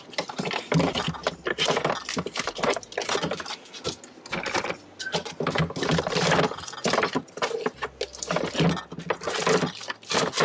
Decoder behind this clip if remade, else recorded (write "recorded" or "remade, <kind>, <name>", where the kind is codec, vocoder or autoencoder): recorded